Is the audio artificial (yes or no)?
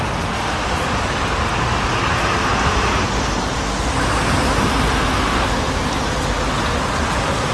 no